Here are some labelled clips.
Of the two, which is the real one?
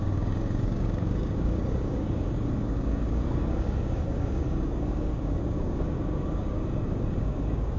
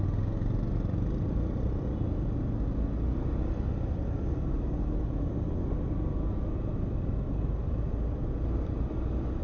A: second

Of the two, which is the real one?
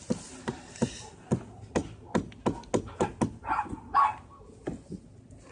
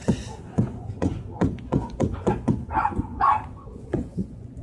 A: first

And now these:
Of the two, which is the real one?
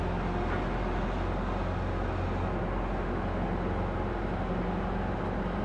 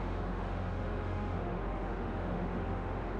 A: first